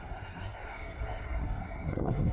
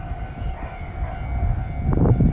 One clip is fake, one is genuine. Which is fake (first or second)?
first